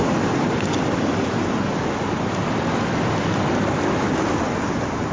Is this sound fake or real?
real